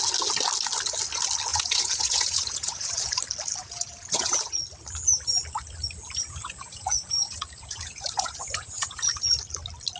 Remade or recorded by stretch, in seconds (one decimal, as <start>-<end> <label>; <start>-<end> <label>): 0.0-1.5 recorded; 1.5-3.2 remade; 3.2-3.6 recorded; 3.6-4.6 remade; 4.6-6.2 recorded; 6.2-9.3 remade; 9.3-10.0 recorded

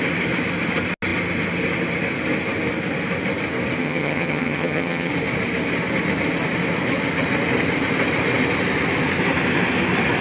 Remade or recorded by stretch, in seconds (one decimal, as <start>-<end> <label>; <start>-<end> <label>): 0.0-3.8 recorded; 3.8-5.1 remade; 5.1-10.2 recorded

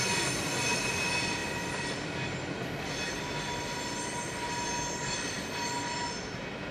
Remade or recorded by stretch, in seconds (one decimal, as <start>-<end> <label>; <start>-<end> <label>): 0.0-6.7 recorded

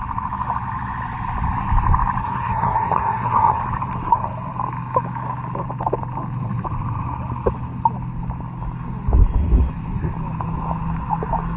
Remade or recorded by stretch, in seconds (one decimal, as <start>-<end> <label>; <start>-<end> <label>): 0.0-2.2 recorded; 2.2-3.6 remade; 3.6-11.6 recorded

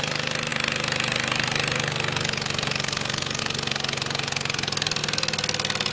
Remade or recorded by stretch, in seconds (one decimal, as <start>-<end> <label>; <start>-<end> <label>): 0.0-5.9 recorded

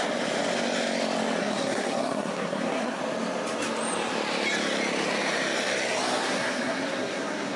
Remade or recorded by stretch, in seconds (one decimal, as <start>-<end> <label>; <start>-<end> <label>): 0.0-1.4 recorded; 1.4-3.0 remade; 3.0-6.2 recorded; 6.2-7.6 remade

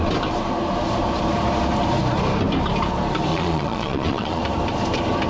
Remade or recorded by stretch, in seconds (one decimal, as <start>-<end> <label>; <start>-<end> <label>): 0.0-3.3 recorded; 3.3-4.4 remade; 4.4-5.3 recorded